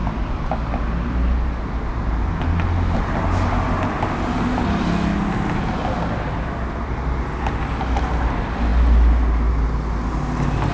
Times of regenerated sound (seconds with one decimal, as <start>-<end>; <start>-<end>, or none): none